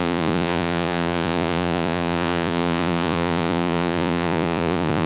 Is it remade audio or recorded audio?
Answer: remade